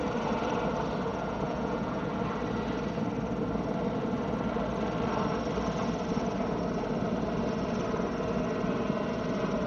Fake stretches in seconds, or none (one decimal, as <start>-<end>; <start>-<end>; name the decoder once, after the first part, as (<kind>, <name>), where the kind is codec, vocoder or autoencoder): 1.1-2.1 (vocoder, Vocos)